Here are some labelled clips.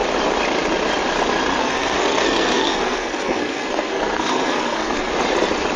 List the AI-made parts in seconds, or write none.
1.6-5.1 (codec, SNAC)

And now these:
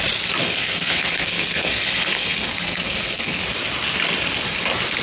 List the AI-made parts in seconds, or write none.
0.4-3.4 (codec, SNAC)

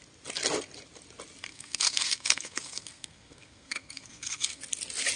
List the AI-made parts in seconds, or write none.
1.5-4.6 (codec, SNAC)

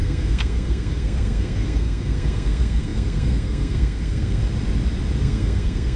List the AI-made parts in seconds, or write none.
0.0-4.4 (codec, SNAC); 5.2-6.0

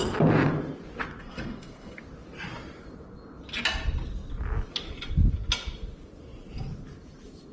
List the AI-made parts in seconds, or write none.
1.2-2.0 (codec, SNAC)